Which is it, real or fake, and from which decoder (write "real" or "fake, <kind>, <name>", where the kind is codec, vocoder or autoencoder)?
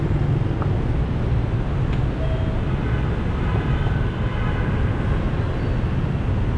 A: real